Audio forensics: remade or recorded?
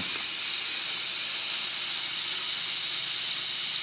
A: remade